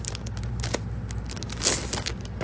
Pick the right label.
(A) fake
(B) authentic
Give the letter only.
B